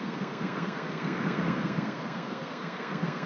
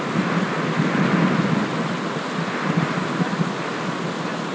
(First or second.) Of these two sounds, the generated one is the first